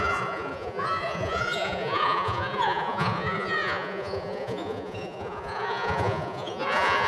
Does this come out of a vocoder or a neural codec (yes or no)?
yes